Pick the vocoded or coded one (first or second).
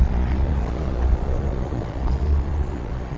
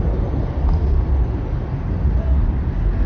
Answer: first